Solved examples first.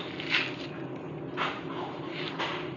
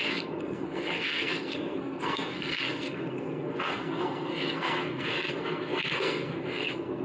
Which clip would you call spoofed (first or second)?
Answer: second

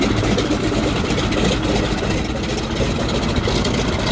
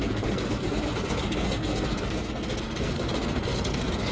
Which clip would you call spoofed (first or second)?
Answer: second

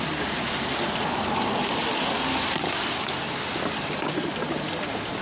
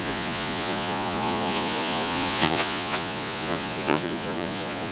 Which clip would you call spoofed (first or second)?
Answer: second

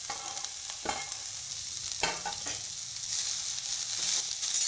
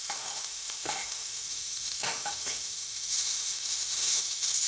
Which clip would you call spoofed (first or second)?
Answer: second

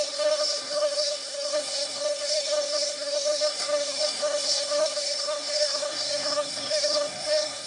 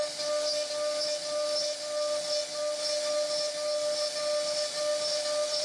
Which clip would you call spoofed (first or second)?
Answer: first